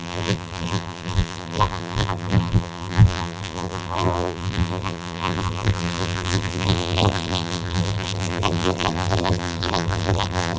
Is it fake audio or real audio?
fake